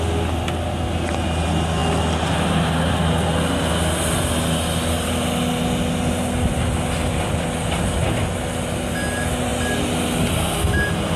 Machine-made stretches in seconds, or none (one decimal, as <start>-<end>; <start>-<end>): none